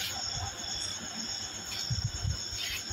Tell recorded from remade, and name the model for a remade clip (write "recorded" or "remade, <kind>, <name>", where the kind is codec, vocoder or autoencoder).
recorded